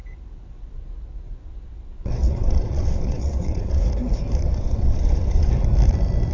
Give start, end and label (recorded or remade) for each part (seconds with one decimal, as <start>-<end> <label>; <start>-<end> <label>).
0.0-3.8 remade; 3.8-4.5 recorded; 4.5-5.5 remade; 5.5-6.3 recorded